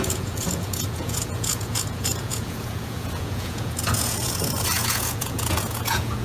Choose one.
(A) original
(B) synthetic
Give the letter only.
B